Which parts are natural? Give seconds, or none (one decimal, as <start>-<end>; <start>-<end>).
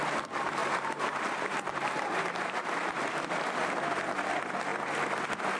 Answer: 0.0-0.6; 3.0-5.6